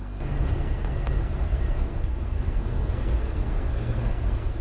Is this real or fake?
fake